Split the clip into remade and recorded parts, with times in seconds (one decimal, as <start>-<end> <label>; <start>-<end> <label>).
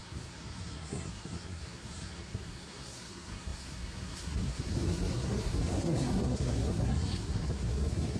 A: 0.0-8.2 remade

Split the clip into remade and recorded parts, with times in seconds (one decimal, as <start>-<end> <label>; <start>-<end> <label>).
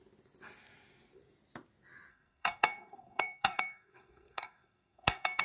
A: 0.0-2.1 recorded; 2.1-5.4 remade